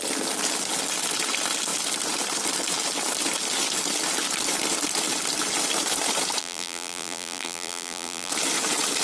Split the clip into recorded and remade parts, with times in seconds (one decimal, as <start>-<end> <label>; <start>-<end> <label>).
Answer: 0.0-6.4 recorded; 6.4-8.3 remade; 8.3-9.0 recorded